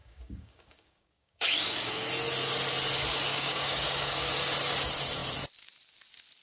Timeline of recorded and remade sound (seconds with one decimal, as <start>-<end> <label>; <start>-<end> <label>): 0.0-2.1 remade; 2.1-3.3 recorded; 3.3-4.3 remade; 4.3-6.4 recorded